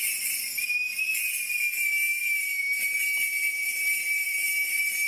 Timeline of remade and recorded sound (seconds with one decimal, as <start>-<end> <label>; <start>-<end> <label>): 0.0-3.6 recorded; 3.6-5.1 remade